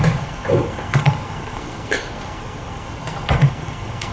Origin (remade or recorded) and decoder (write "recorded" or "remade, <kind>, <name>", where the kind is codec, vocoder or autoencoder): remade, codec, SNAC